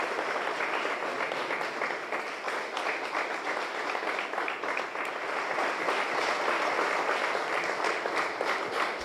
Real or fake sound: real